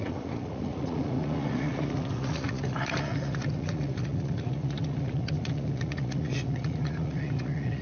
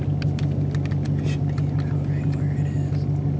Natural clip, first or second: second